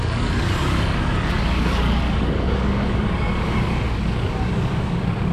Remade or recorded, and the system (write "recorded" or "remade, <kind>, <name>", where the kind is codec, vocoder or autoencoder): remade, codec, DAC